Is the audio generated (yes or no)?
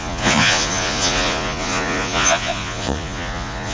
yes